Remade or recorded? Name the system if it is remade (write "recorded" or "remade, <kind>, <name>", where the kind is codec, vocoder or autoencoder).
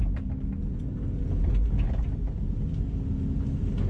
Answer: recorded